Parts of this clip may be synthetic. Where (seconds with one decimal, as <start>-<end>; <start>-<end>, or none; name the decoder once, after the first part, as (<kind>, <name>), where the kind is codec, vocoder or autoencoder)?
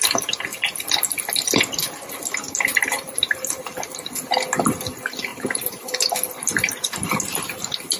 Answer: 5.3-6.1 (vocoder, BigVGAN v2)